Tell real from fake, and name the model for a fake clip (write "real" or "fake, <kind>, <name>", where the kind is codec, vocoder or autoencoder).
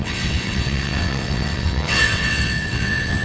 fake, vocoder, WaveNeXt